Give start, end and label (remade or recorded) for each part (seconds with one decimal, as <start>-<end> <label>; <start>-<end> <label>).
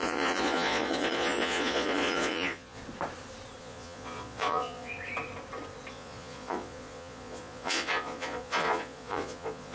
0.0-2.8 remade; 2.8-3.6 recorded; 3.6-4.9 remade; 4.9-5.9 recorded; 5.9-9.7 remade